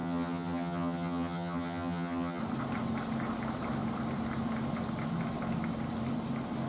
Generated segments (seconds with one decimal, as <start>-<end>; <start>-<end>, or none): 0.0-2.4